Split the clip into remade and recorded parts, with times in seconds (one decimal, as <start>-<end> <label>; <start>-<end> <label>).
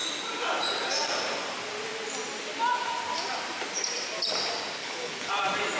0.0-4.8 recorded; 4.8-5.3 remade; 5.3-5.8 recorded